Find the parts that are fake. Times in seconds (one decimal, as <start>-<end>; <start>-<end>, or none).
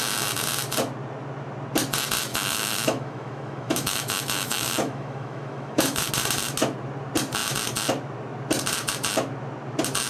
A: 2.3-6.1